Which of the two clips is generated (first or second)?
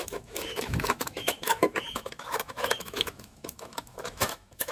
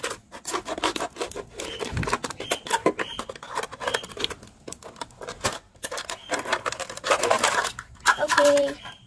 first